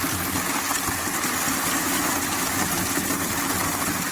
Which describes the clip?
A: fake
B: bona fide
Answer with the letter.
B